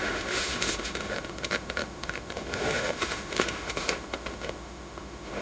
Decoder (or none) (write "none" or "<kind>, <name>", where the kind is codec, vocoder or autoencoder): autoencoder, DAC-VAE